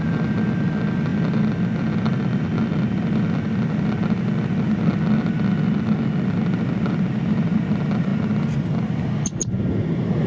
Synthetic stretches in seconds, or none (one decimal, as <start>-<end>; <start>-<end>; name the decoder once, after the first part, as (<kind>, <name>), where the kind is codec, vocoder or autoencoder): none